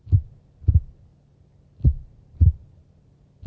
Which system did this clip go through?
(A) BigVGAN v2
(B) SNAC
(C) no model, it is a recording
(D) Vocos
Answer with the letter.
C